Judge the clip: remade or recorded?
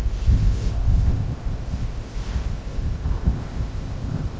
remade